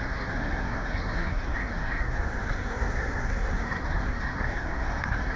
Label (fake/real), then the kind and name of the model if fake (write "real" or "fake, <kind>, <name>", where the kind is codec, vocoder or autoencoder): fake, codec, SNAC